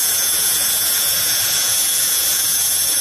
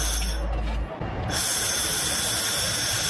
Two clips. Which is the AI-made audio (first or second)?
first